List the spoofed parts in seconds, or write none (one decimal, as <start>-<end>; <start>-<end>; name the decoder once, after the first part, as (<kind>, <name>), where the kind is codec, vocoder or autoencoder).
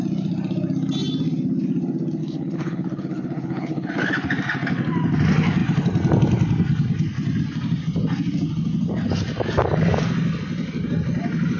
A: 2.2-3.9 (codec, HILCodec)